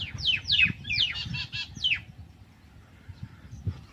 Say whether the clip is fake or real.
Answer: real